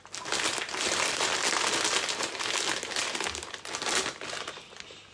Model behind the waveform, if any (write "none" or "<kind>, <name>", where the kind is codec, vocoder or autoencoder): none